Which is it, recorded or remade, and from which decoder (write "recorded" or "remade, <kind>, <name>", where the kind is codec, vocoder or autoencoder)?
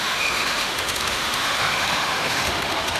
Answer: remade, autoencoder, DAC-VAE